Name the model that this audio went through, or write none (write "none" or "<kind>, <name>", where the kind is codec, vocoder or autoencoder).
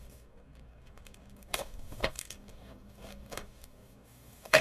codec, DAC